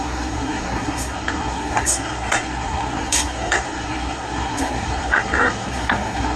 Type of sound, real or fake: fake